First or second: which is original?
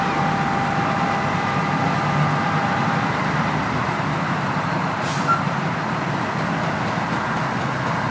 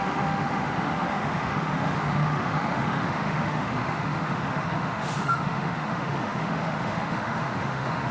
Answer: first